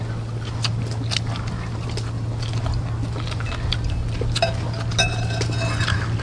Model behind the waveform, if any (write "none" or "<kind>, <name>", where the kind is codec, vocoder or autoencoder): none